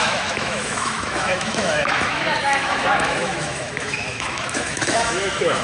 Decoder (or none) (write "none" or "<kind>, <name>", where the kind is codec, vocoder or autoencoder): autoencoder, DAC-VAE